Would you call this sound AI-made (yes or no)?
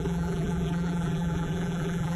yes